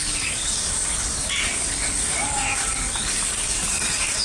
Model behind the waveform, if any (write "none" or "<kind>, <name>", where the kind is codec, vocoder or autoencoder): codec, DAC